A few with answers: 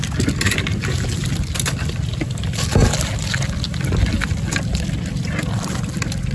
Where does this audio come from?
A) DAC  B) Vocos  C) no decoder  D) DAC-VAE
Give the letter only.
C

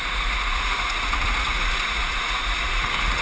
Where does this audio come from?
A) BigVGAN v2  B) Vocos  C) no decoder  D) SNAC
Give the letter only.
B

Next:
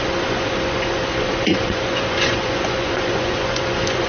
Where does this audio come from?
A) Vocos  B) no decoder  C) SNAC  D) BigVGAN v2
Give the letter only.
A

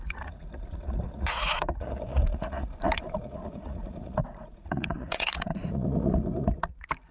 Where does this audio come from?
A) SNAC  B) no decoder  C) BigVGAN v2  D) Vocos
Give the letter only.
D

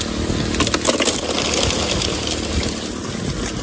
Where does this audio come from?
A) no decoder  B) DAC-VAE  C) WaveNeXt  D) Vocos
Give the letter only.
A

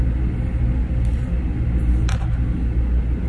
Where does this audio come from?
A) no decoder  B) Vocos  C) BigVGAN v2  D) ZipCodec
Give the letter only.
A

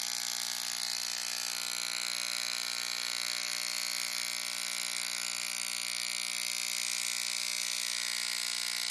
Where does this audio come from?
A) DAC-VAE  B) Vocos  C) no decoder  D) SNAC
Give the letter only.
C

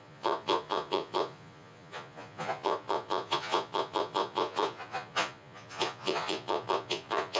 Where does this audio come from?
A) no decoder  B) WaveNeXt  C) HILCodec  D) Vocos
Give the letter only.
D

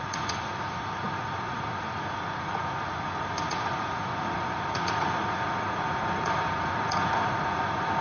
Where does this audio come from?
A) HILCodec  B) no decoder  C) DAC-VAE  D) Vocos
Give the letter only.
D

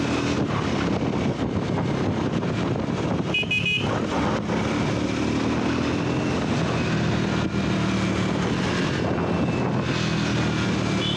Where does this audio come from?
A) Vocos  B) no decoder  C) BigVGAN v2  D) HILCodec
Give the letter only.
B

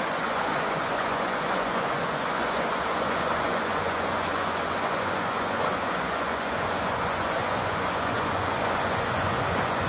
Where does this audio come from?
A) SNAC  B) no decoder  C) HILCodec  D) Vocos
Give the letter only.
D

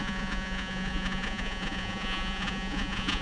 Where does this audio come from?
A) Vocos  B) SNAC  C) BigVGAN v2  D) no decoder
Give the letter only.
A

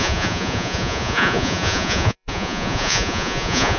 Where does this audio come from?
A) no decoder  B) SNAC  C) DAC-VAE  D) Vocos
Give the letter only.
D